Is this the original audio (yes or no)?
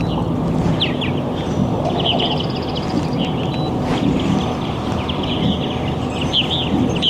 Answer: yes